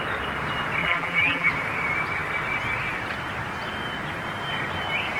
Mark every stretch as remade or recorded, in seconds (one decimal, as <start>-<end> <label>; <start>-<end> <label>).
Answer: 0.0-0.8 recorded; 0.8-1.5 remade; 1.5-5.2 recorded